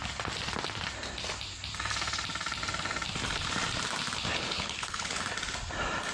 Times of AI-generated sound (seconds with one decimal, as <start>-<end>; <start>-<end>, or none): 4.3-5.2